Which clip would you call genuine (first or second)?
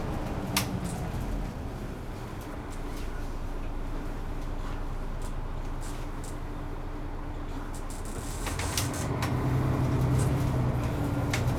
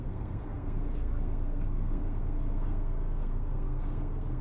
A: first